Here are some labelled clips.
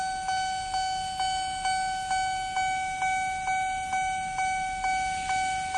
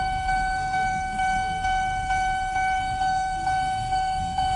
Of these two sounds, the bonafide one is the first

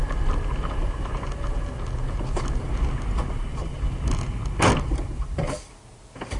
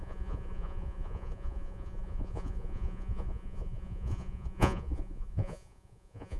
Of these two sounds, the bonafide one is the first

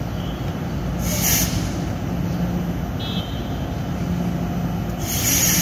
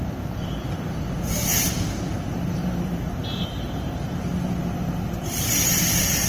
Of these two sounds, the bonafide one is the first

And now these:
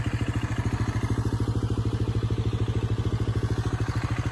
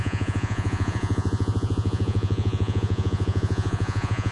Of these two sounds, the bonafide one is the first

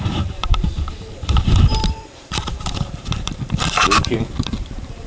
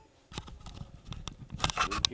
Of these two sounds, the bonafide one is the second